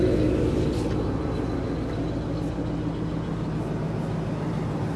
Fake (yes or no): no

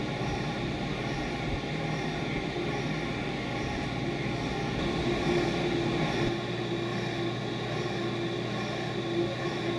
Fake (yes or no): no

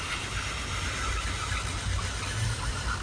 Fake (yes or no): no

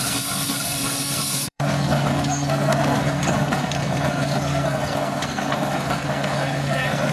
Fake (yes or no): yes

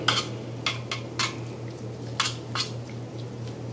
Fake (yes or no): no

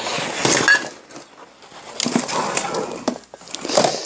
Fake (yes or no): no